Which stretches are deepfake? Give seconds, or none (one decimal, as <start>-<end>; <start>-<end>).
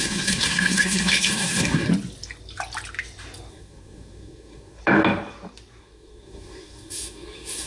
0.0-1.9; 3.5-4.8; 5.8-7.7